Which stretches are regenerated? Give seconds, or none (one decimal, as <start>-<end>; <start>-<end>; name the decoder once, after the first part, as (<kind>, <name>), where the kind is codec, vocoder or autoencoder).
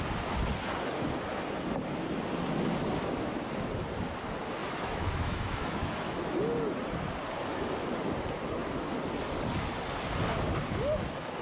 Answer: 4.6-6.4 (autoencoder, DAC-VAE)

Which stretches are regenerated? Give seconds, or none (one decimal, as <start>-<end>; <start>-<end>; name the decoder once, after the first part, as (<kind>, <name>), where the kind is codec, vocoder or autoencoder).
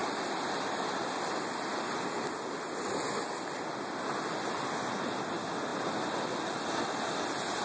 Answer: none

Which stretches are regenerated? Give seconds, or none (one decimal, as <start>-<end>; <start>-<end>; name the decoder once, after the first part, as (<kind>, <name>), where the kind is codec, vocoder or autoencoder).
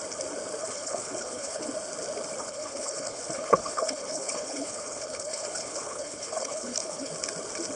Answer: 0.6-1.7 (codec, HILCodec); 2.4-7.1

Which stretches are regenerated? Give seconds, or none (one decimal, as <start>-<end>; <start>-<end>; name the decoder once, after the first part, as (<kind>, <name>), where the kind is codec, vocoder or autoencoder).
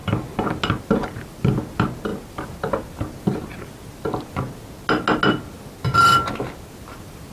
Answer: none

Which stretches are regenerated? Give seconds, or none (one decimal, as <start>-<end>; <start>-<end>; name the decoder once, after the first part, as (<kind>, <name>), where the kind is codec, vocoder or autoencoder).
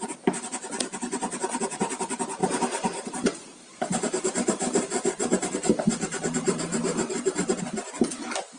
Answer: 2.4-7.6 (vocoder, BigVGAN v2)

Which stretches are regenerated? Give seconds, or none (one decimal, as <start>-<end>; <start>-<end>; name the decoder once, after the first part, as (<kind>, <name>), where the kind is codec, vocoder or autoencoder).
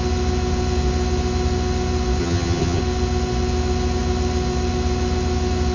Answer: 2.2-2.8 (vocoder, HiFi-GAN)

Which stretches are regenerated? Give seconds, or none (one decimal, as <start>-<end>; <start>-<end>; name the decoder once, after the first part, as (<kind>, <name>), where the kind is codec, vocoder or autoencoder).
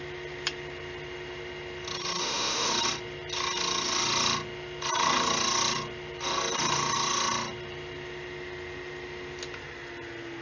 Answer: 2.2-2.7 (autoencoder, DAC-VAE)